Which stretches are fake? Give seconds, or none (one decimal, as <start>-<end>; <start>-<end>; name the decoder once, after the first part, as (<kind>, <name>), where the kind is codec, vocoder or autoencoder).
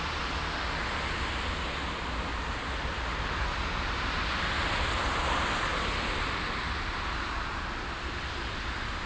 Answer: 2.3-4.3 (vocoder, BigVGAN v2)